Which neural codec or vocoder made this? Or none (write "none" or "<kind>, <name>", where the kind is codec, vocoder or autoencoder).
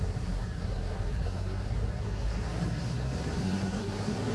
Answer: codec, SNAC